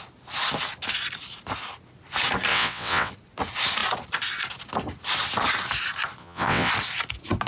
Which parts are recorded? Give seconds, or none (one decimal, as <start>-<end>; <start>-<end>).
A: 0.0-2.5; 3.1-6.2; 6.7-7.5